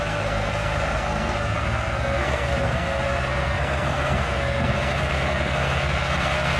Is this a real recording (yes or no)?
no